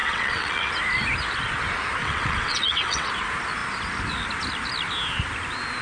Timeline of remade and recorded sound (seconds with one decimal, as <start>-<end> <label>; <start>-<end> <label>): 0.0-0.7 remade; 0.7-2.0 recorded; 2.0-3.1 remade; 3.1-5.8 recorded